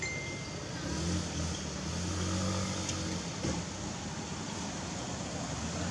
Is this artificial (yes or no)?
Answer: no